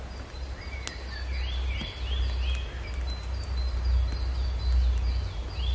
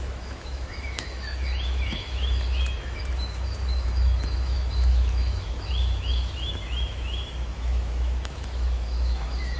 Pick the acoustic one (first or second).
first